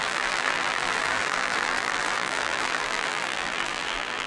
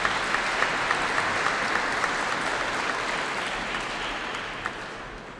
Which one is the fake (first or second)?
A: first